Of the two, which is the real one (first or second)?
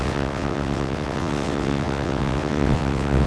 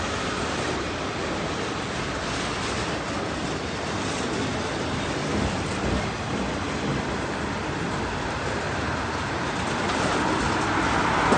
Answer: second